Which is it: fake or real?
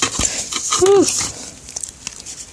real